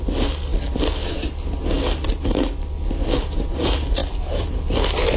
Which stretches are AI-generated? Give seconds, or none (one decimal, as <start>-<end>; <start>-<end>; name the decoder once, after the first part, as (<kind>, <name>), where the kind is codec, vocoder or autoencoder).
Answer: none